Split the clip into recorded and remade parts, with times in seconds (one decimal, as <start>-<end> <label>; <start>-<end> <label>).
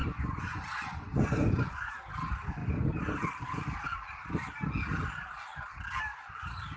0.0-2.1 remade; 2.1-6.8 recorded